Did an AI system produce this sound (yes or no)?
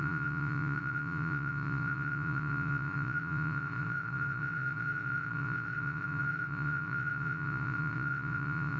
yes